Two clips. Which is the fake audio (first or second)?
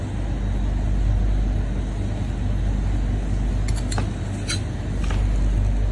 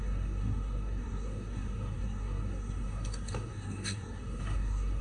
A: second